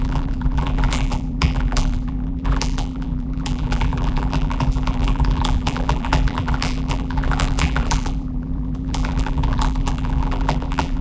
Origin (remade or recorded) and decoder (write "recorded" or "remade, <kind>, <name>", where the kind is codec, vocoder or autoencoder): remade, vocoder, BigVGAN v2